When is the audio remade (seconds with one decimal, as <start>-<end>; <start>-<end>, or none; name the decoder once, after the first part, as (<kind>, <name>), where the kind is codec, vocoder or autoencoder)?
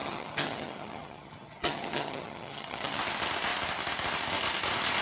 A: 0.0-3.0 (vocoder, HiFi-GAN)